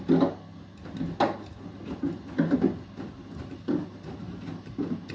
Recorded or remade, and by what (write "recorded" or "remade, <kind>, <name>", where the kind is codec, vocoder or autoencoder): recorded